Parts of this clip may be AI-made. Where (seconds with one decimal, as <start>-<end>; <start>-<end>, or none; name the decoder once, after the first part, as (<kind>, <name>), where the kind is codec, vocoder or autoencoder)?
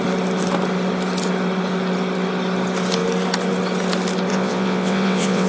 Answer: 4.3-5.5 (vocoder, WaveNeXt)